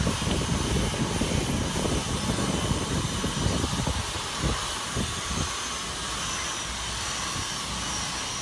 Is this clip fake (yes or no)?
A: no